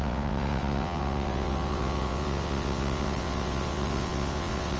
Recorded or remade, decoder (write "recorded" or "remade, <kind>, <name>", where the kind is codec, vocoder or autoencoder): remade, vocoder, WaveNeXt